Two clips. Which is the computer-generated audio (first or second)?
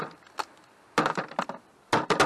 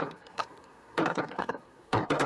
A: second